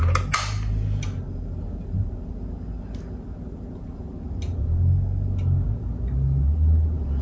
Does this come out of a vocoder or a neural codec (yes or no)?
no